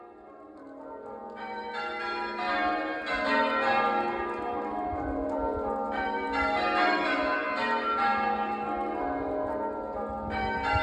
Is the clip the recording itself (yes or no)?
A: yes